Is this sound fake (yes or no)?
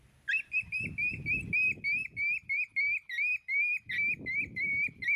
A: no